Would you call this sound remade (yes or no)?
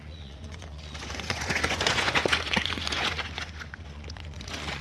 yes